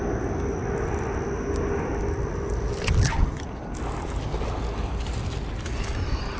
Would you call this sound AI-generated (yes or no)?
no